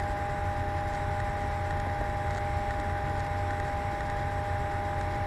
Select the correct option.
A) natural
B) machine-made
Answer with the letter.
A